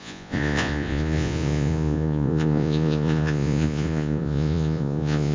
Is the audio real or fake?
fake